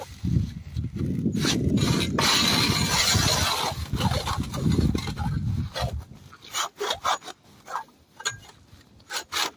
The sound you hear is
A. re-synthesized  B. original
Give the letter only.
B